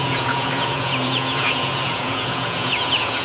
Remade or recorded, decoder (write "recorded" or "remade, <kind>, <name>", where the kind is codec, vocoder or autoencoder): remade, vocoder, Vocos